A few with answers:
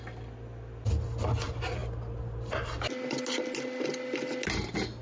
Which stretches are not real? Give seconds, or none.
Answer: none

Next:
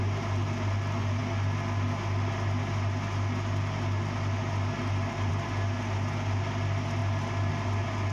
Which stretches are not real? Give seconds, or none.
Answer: none